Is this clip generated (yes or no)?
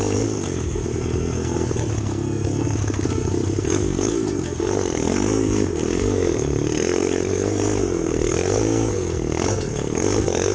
yes